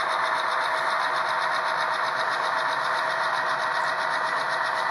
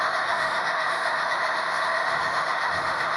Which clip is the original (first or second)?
first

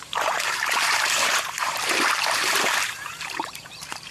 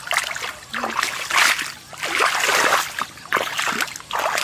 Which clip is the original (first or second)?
second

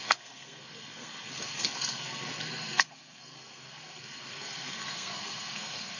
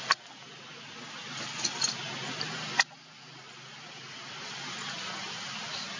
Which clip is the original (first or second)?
second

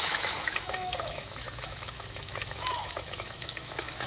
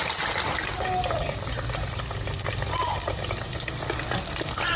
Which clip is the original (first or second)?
second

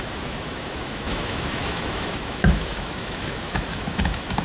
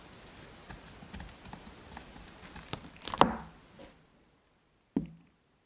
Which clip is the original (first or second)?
second